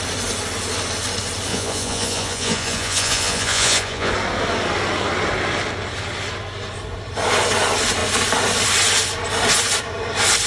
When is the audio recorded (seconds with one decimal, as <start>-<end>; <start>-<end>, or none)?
0.0-1.5; 4.1-10.5